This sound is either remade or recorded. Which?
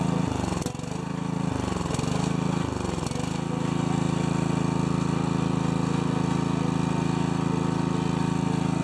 recorded